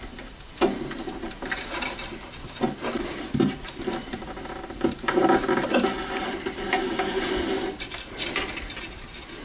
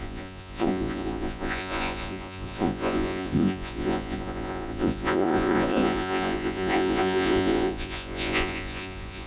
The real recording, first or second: first